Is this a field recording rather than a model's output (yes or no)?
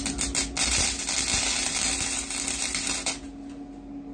yes